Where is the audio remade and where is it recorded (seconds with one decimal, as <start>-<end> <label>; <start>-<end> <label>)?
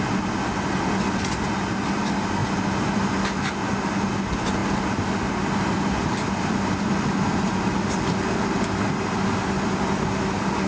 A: 0.0-10.7 recorded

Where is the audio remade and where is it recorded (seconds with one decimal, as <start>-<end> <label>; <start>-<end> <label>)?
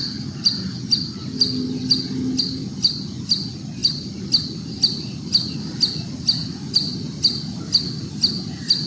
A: 0.0-8.9 recorded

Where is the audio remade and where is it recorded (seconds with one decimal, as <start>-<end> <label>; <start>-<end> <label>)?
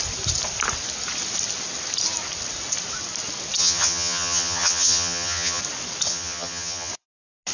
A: 0.0-3.6 recorded; 3.6-5.6 remade; 5.6-6.1 recorded; 6.1-6.9 remade; 6.9-7.5 recorded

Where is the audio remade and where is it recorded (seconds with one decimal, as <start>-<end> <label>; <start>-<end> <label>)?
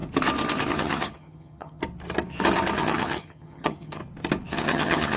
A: 0.0-0.7 recorded; 0.7-1.8 remade; 1.8-2.8 recorded; 2.8-4.0 remade; 4.0-4.5 recorded; 4.5-5.2 remade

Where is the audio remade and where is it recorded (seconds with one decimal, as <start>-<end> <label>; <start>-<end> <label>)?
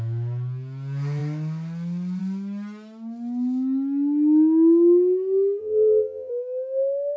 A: 0.0-5.6 recorded; 5.6-6.3 remade; 6.3-7.2 recorded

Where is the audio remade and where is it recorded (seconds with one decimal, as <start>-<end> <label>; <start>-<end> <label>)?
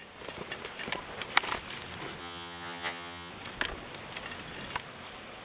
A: 0.0-2.2 recorded; 2.2-3.3 remade; 3.3-5.4 recorded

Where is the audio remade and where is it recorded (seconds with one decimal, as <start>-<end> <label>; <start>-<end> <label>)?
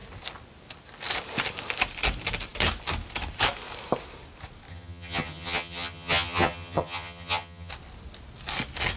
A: 0.0-4.7 recorded; 4.7-7.7 remade; 7.7-9.0 recorded